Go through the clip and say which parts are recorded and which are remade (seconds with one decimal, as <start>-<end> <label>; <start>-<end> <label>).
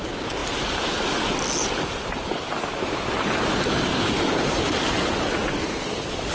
0.0-1.6 recorded; 1.6-5.4 remade; 5.4-6.3 recorded